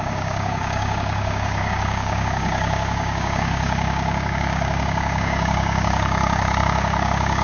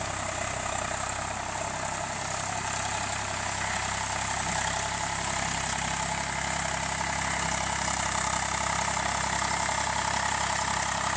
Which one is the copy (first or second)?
first